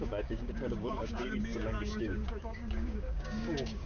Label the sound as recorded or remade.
remade